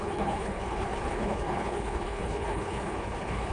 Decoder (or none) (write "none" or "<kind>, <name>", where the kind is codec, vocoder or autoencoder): codec, HILCodec